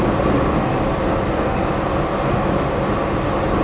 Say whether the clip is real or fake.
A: real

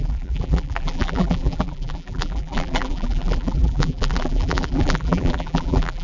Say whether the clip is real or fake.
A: fake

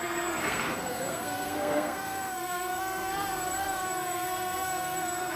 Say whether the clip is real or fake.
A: fake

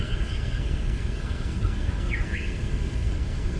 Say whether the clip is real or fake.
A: fake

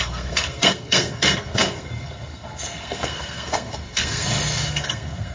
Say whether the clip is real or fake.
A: fake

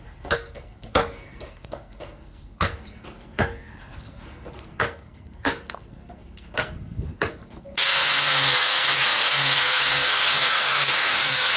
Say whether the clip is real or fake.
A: fake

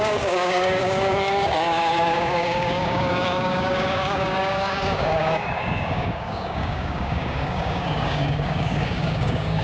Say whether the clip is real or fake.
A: fake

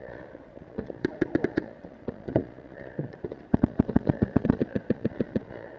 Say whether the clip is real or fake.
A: fake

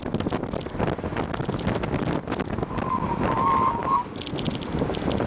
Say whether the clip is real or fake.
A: real